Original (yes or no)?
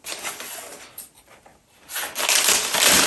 yes